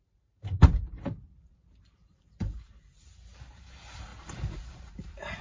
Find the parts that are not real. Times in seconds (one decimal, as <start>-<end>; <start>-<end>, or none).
0.0-5.4